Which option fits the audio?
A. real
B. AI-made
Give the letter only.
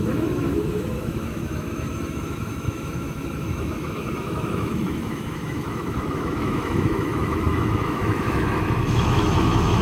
B